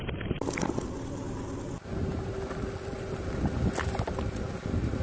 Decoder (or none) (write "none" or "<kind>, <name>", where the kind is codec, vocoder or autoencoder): none